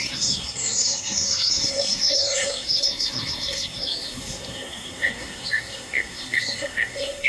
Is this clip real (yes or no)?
no